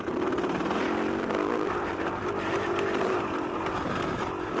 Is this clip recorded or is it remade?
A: recorded